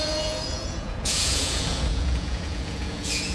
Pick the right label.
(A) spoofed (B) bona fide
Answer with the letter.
A